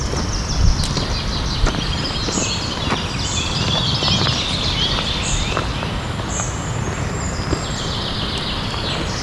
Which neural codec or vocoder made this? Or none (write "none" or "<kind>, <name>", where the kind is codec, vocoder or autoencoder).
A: none